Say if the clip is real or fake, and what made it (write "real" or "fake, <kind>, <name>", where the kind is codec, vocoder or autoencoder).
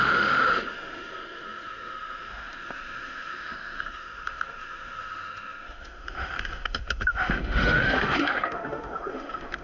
fake, autoencoder, DAC-VAE